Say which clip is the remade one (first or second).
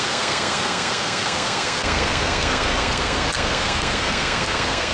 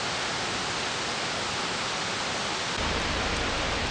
first